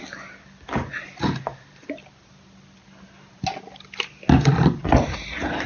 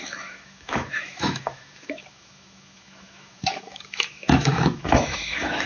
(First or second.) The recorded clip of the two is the first